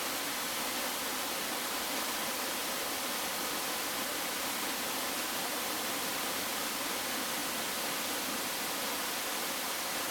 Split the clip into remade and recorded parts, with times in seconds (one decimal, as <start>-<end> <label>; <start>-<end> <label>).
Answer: 0.0-1.1 recorded; 1.1-1.9 remade; 1.9-6.1 recorded; 6.1-6.7 remade; 6.7-10.1 recorded